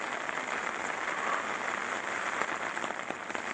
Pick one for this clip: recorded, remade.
recorded